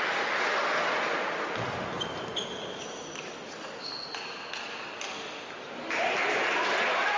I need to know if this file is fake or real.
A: real